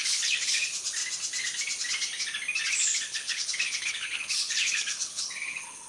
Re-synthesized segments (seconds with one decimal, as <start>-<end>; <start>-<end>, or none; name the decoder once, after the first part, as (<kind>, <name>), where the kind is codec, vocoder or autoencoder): 0.0-1.0 (codec, HILCodec); 2.7-5.9